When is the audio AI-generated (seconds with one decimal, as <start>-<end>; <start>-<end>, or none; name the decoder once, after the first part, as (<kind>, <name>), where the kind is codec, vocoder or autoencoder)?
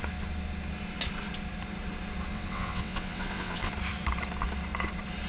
2.3-3.7 (vocoder, WaveNeXt)